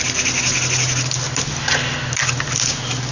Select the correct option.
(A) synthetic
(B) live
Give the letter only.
B